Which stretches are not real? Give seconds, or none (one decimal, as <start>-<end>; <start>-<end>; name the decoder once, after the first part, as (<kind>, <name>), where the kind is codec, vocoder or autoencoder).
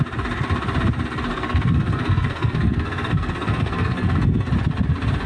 1.3-4.5 (codec, SNAC)